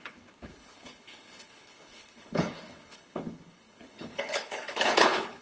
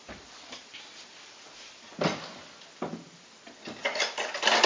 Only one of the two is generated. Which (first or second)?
first